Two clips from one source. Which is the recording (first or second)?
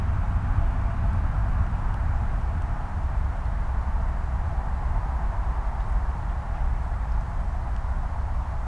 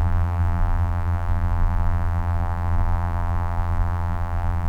first